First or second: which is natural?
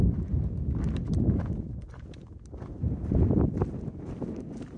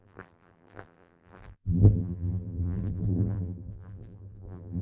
first